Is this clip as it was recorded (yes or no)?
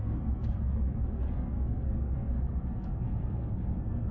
no